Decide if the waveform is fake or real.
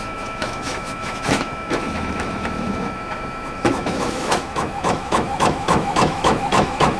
fake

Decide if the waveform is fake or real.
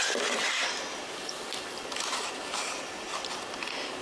real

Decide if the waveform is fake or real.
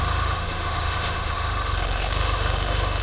fake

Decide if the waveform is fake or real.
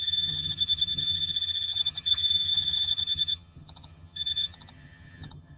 fake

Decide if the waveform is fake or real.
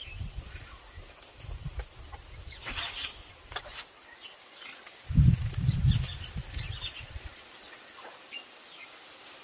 fake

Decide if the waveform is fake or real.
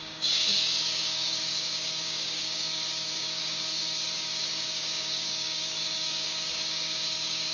fake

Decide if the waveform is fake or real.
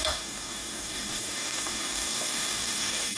fake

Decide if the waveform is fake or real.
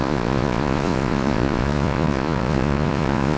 fake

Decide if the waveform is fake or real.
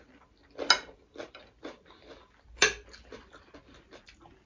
real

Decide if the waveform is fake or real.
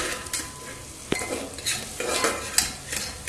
real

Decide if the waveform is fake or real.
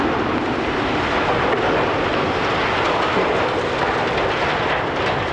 real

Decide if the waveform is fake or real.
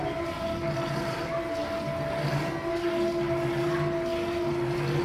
real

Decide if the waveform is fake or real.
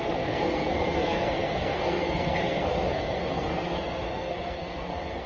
fake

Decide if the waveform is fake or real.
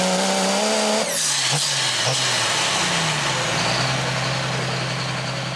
real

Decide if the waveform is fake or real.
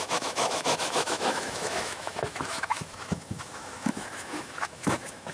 fake